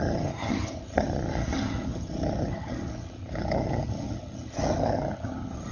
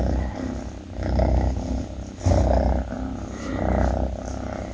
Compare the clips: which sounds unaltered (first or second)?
second